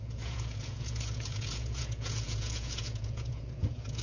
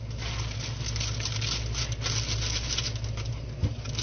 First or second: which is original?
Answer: second